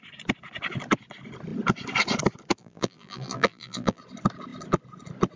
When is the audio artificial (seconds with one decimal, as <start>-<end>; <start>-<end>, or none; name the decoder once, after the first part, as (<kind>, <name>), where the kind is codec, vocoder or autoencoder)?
2.6-4.0 (vocoder, BigVGAN v2)